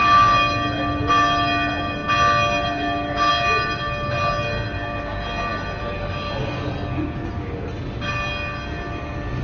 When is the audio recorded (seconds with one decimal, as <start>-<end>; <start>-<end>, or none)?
0.0-9.4